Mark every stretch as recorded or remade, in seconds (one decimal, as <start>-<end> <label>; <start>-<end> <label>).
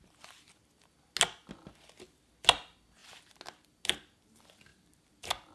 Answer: 0.0-5.5 recorded